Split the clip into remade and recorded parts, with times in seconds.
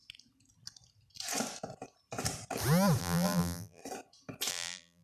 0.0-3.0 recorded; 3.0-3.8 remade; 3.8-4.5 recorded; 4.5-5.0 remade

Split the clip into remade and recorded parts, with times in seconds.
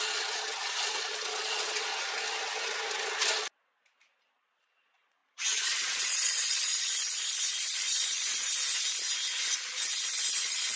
0.0-1.9 remade; 1.9-4.2 recorded; 4.2-8.3 remade; 8.3-10.0 recorded; 10.0-10.8 remade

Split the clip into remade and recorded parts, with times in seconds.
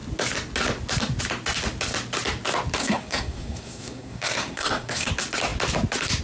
0.0-2.8 recorded; 2.8-5.1 remade; 5.1-6.2 recorded